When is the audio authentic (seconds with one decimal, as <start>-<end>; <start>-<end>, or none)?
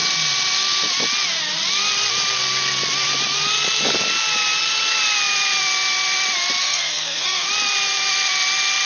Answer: 0.0-6.6; 7.5-8.9